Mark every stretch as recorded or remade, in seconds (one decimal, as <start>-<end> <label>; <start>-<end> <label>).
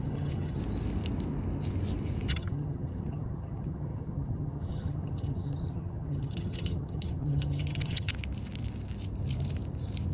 0.0-0.6 remade; 0.6-2.3 recorded; 2.3-8.1 remade; 8.1-10.1 recorded